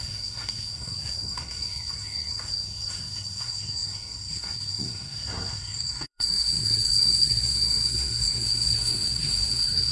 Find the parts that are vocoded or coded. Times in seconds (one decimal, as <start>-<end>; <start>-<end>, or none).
0.0-9.9